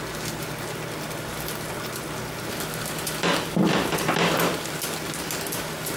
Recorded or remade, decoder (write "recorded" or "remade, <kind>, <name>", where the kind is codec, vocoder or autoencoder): recorded